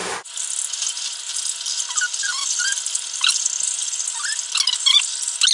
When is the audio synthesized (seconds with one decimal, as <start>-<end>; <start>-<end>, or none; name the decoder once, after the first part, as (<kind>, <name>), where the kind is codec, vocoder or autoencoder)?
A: none